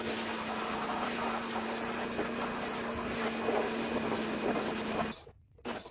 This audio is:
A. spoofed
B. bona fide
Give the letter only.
B